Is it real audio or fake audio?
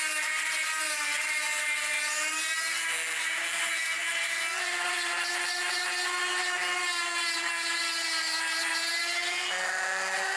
real